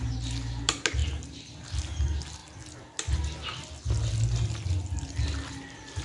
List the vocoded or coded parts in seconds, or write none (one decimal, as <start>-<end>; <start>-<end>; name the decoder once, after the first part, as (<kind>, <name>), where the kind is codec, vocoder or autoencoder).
none